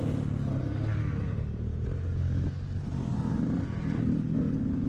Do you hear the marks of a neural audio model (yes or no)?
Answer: no